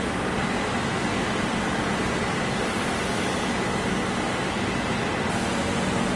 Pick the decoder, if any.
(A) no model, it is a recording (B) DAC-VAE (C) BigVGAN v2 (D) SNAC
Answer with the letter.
A